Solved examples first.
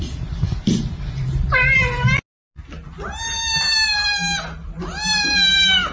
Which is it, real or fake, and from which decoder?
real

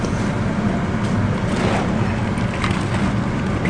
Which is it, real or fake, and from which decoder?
real